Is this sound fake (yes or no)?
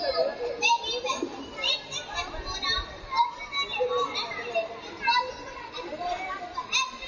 no